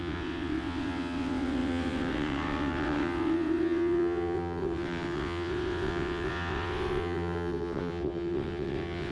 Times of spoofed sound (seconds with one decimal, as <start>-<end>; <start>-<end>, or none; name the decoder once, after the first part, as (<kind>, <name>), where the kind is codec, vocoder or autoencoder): 0.0-9.1 (vocoder, WaveNeXt)